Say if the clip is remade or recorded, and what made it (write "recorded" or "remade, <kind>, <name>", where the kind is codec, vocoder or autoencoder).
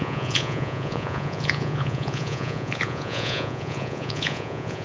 remade, vocoder, Vocos